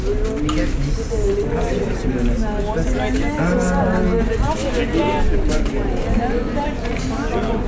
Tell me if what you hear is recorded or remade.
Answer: recorded